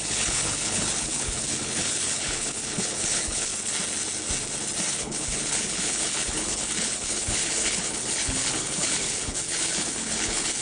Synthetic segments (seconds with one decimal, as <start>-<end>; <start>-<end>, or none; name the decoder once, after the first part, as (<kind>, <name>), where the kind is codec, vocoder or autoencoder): 0.0-3.5 (codec, HILCodec); 4.9-10.6